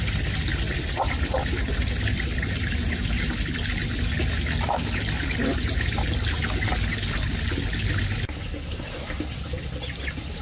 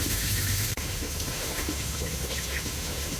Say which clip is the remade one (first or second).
second